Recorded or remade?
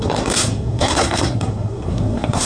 remade